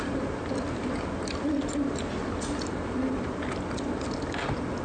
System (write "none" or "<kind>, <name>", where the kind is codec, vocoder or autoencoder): vocoder, BigVGAN v2